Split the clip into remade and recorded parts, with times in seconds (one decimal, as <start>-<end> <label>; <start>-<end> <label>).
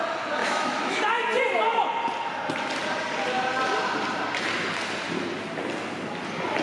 0.0-0.4 recorded; 0.4-1.0 remade; 1.0-6.6 recorded